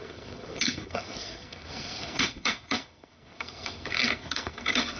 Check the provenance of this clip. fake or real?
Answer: fake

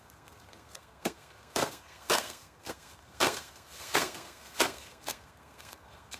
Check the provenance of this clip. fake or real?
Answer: fake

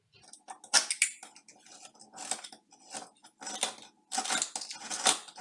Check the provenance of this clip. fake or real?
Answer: real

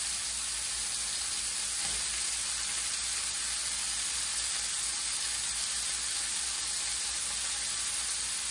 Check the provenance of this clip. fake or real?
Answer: real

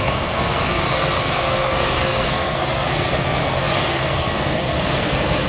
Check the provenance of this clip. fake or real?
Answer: fake